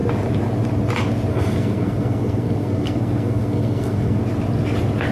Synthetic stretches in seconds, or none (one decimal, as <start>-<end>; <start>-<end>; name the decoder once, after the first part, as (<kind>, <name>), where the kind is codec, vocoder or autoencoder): 1.3-4.2 (codec, SNAC)